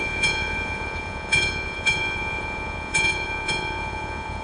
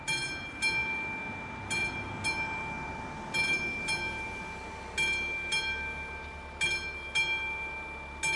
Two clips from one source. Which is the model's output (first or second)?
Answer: first